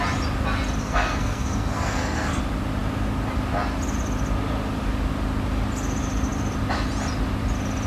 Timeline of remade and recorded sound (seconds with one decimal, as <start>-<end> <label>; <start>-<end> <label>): 0.0-0.8 recorded; 0.8-2.4 remade; 2.4-7.9 recorded